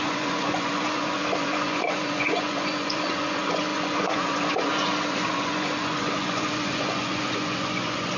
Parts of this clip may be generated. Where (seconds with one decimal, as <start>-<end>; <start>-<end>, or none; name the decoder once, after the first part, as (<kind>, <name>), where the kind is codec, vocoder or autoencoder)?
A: 0.0-8.2 (vocoder, Vocos)

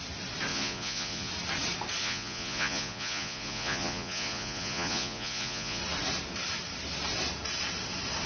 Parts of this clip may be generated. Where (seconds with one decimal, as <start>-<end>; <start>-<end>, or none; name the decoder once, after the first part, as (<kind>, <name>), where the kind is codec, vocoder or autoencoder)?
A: 0.5-1.3 (vocoder, Vocos); 2.0-5.8